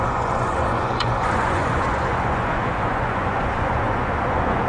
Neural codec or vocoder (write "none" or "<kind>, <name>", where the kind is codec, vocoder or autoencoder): vocoder, Vocos